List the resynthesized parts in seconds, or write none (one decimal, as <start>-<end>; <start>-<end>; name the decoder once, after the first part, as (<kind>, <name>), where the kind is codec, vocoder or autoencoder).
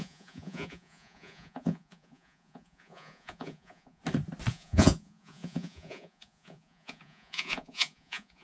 0.0-4.0 (vocoder, Vocos); 4.5-8.4